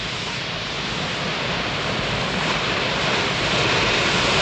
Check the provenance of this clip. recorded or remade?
recorded